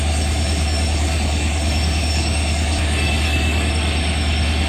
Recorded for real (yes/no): no